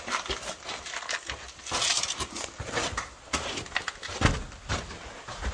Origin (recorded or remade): recorded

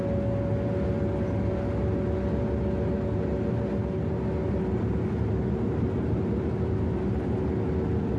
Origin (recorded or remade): recorded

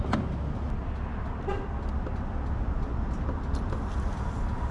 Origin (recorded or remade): recorded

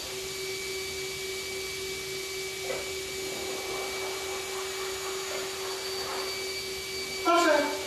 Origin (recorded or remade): recorded